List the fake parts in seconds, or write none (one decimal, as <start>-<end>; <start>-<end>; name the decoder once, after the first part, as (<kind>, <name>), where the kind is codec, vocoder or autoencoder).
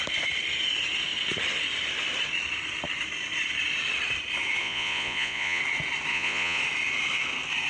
4.6-5.6 (vocoder, Vocos); 6.1-6.6